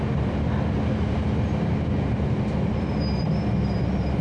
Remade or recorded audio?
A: recorded